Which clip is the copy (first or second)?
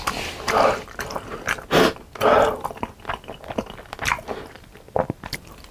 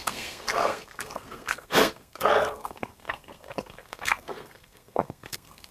second